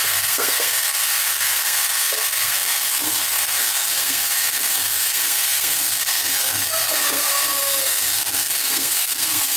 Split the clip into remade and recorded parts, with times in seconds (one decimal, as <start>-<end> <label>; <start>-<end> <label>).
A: 0.0-9.6 remade